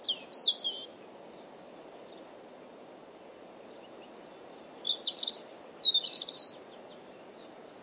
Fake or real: real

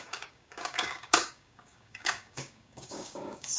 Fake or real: fake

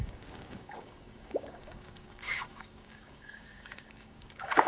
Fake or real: fake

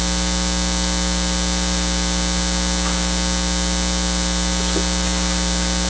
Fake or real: real